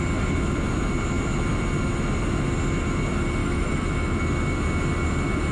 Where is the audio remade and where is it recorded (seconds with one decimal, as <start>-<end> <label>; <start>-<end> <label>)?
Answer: 0.0-3.4 recorded; 3.4-4.2 remade; 4.2-5.5 recorded